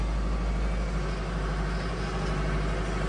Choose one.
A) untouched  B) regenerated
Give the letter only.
A